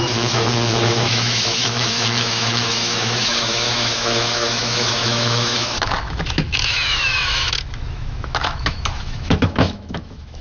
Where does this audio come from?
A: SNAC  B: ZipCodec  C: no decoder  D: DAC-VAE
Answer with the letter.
D